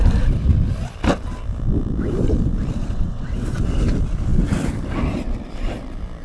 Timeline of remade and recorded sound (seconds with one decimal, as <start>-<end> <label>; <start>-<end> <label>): 0.0-2.8 recorded; 2.8-3.6 remade; 3.6-6.2 recorded